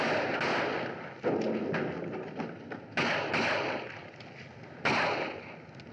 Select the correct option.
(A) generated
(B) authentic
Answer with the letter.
B